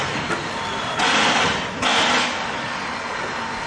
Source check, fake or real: real